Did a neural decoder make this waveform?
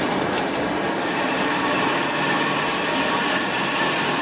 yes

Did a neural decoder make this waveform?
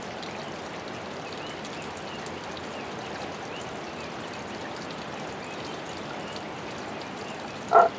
no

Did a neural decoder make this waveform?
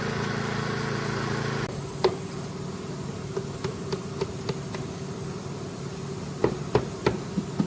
no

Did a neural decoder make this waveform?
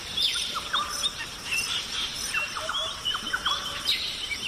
yes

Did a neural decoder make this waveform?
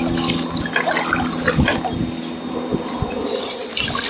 no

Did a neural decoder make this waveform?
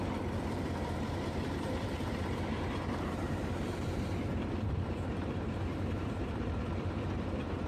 yes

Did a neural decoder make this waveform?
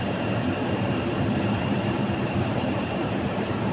yes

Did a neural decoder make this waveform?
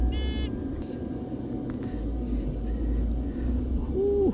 no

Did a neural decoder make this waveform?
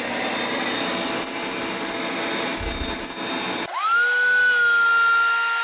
no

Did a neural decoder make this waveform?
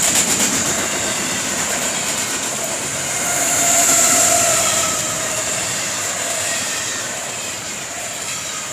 yes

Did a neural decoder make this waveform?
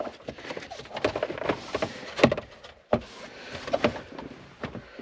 no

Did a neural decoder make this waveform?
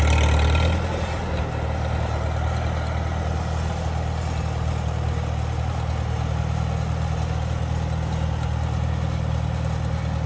no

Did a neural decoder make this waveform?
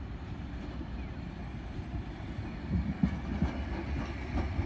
no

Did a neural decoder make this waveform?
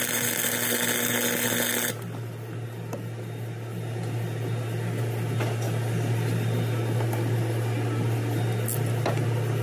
no